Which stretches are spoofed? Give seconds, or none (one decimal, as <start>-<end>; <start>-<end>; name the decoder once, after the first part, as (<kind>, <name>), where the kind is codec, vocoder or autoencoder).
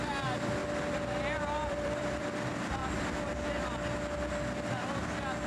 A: 0.0-0.6 (vocoder, BigVGAN v2); 1.7-2.8